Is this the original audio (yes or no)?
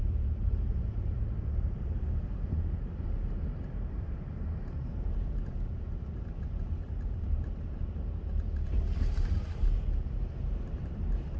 no